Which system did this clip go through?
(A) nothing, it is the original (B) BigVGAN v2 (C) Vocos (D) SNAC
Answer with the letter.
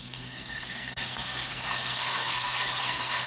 D